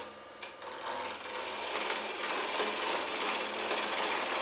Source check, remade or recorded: recorded